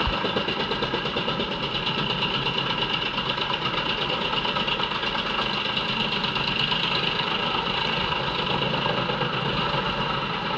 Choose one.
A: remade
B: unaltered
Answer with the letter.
B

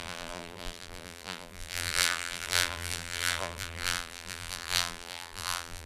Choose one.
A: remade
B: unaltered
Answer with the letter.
A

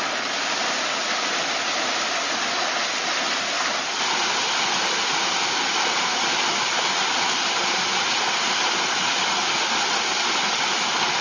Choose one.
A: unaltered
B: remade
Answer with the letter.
A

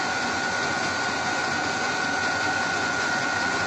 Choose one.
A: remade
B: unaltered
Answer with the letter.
A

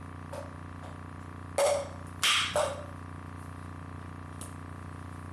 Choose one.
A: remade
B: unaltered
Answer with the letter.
B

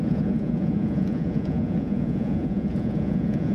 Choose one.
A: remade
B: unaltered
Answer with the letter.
A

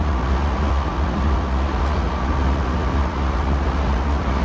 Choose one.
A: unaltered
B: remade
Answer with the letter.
B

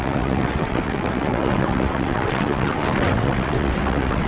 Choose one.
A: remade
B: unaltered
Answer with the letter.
A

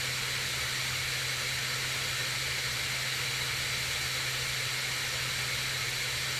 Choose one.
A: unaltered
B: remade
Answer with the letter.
A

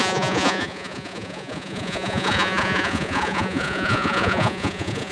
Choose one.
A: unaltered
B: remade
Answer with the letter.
B